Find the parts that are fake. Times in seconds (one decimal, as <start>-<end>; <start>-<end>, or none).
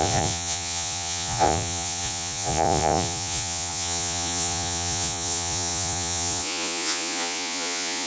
0.0-8.1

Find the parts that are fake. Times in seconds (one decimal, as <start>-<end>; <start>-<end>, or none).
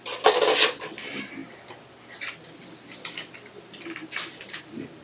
4.0-4.6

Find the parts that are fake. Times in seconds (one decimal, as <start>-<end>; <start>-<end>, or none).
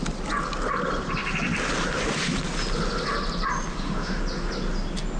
3.7-4.2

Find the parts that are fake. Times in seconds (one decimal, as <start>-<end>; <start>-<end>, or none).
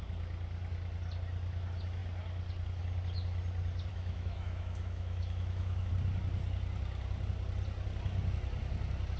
3.9-5.9